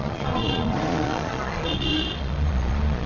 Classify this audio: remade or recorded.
remade